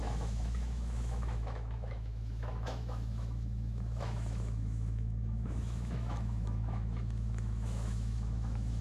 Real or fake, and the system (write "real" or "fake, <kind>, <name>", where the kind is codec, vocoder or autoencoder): fake, autoencoder, DAC-VAE